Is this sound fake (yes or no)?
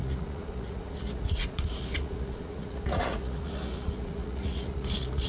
yes